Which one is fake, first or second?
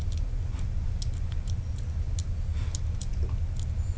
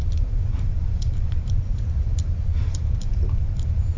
second